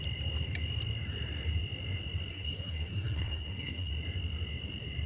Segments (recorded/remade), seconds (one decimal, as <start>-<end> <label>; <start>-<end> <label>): 0.0-2.3 recorded; 2.3-3.9 remade; 3.9-5.1 recorded

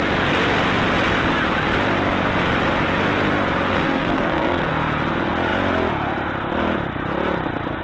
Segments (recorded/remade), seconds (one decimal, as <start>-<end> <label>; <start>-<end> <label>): 0.0-3.7 recorded; 3.7-4.7 remade; 4.7-7.8 recorded

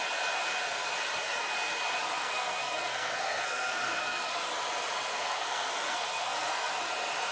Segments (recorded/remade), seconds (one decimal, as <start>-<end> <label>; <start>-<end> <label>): 0.0-2.2 recorded; 2.2-4.5 remade; 4.5-5.1 recorded; 5.1-6.7 remade; 6.7-7.3 recorded

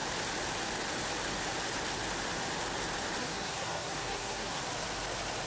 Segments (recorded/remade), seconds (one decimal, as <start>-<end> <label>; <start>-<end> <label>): 0.0-3.2 recorded; 3.2-4.6 remade; 4.6-5.5 recorded

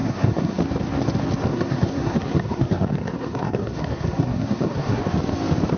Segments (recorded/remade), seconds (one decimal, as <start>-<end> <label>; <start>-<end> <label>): 0.0-0.6 remade; 0.6-1.5 recorded; 1.5-5.0 remade; 5.0-5.8 recorded

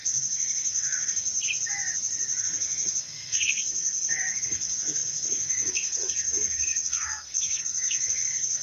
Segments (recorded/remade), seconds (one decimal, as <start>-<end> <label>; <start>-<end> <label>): 0.0-1.3 remade; 1.3-2.4 recorded; 2.4-8.6 remade

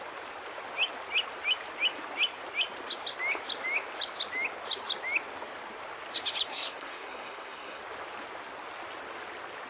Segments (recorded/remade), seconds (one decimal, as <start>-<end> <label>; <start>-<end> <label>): 0.0-6.5 recorded; 6.5-7.8 remade; 7.8-9.7 recorded

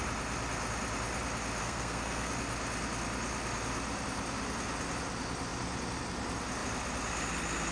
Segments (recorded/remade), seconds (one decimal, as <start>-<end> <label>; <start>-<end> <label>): 0.0-1.6 recorded; 1.6-2.3 remade; 2.3-7.7 recorded